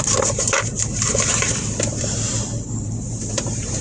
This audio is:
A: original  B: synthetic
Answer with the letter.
B